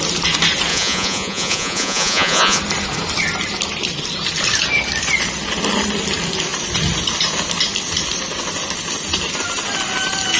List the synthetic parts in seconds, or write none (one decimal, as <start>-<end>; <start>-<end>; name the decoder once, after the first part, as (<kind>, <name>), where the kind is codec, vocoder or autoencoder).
0.7-2.6 (vocoder, Vocos)

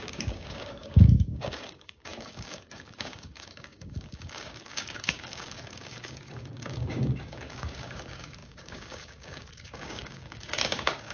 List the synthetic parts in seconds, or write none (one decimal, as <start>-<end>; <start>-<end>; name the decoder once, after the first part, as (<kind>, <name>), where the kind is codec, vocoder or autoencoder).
0.0-11.1 (codec, DAC)

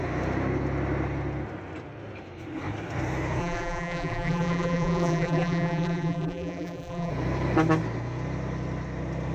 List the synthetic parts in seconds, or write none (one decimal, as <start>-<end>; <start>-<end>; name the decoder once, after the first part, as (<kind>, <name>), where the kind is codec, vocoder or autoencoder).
3.4-7.1 (vocoder, BigVGAN v2)